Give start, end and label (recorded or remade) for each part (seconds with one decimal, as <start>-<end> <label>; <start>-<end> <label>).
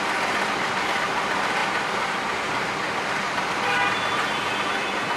0.0-5.2 recorded